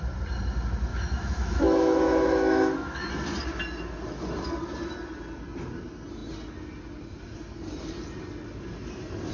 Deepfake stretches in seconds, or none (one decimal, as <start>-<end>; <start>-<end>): 0.9-3.1